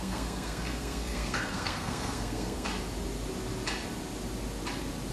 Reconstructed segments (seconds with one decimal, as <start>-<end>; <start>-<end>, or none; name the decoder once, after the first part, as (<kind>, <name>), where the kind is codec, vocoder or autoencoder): 0.0-2.7 (codec, SNAC)